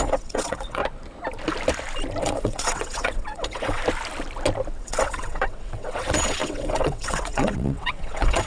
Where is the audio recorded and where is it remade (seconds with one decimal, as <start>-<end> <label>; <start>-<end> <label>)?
0.0-0.8 remade; 0.8-2.2 recorded; 2.2-3.8 remade; 3.8-4.8 recorded; 4.8-8.5 remade